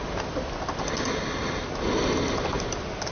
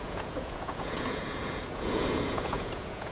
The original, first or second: first